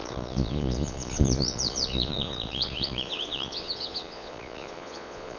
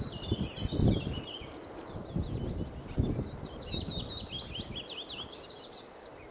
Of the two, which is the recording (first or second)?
second